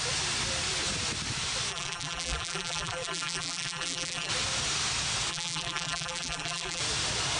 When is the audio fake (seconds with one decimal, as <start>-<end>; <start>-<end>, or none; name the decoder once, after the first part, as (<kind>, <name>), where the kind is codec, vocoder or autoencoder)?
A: 1.7-4.3 (vocoder, BigVGAN v2); 5.3-6.8